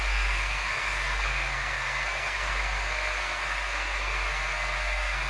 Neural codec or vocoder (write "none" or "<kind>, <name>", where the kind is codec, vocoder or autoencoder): codec, SNAC